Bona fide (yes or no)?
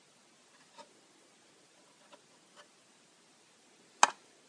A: yes